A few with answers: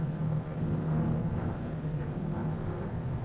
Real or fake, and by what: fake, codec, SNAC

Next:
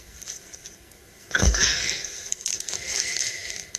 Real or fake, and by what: fake, codec, SNAC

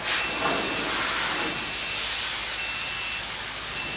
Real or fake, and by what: real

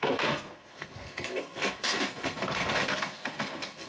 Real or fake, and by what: fake, codec, SNAC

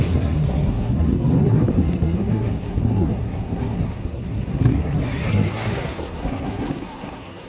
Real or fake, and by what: fake, codec, SNAC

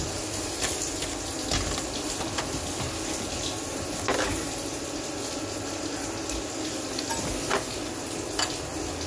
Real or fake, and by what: real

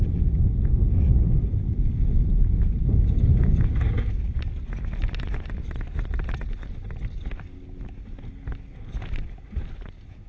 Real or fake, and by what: real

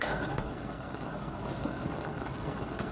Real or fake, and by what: fake, codec, SNAC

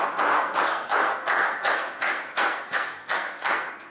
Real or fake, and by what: fake, codec, SNAC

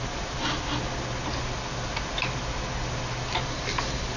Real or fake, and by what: real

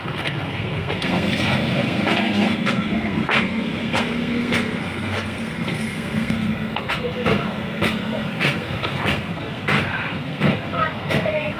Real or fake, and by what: fake, codec, SNAC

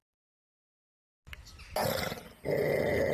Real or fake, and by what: real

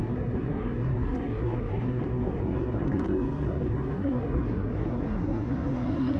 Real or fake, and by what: fake, codec, SNAC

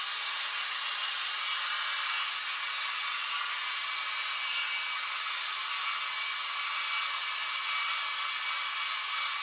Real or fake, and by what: real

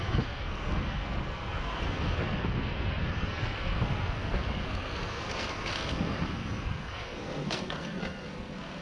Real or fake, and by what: fake, codec, SNAC